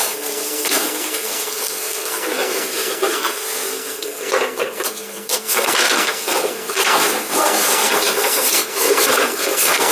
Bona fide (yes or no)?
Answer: no